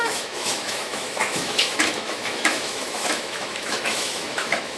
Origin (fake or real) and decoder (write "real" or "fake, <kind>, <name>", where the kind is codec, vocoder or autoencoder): fake, autoencoder, DAC-VAE